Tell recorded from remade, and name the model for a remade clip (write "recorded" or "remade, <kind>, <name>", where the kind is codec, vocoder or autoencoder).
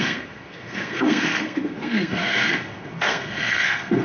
remade, codec, SNAC